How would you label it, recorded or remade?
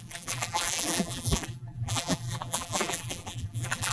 remade